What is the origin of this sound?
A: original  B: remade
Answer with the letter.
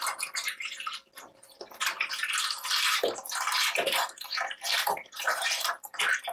A